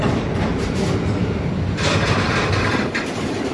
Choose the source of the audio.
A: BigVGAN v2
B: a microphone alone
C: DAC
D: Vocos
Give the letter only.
A